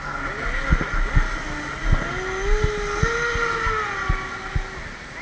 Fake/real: real